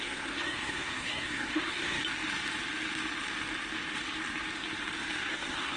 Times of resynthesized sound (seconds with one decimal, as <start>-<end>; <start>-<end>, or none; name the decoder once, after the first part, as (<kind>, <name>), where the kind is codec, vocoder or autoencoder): 0.0-2.0 (codec, SNAC); 5.3-5.8

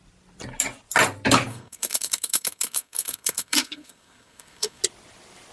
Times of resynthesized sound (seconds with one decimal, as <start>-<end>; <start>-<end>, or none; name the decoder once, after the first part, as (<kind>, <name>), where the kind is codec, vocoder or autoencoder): 1.5-4.8 (codec, SNAC)

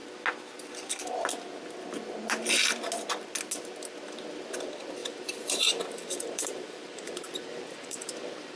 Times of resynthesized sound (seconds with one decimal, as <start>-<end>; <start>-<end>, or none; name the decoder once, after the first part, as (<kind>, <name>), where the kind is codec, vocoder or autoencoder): 5.0-8.6 (vocoder, BigVGAN v2)

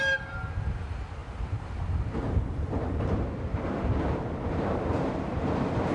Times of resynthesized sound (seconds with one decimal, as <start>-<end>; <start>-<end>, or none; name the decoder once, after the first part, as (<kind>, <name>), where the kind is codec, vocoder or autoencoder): 1.2-3.2 (vocoder, BigVGAN v2)

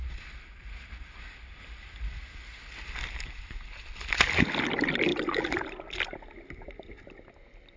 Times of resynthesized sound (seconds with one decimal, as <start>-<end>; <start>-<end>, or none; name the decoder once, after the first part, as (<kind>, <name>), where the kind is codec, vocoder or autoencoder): none

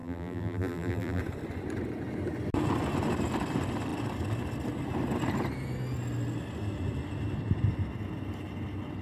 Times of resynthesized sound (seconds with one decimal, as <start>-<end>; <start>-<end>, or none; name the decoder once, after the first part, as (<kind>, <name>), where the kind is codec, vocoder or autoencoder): 0.0-1.2 (vocoder, BigVGAN v2)

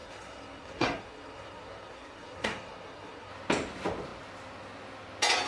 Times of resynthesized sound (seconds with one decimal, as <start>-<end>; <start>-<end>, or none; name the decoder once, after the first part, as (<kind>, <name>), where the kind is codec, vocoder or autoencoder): 0.0-3.3 (codec, SNAC)

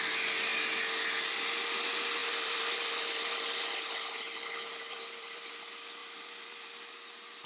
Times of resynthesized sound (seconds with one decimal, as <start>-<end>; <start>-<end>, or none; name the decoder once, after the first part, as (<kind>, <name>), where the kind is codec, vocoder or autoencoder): 2.2-5.5 (vocoder, BigVGAN v2); 6.0-6.7